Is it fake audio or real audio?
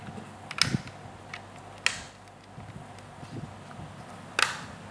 real